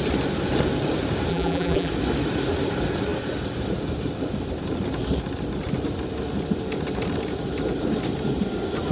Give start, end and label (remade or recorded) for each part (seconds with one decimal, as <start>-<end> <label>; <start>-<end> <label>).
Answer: 0.0-1.3 recorded; 1.3-1.9 remade; 1.9-8.9 recorded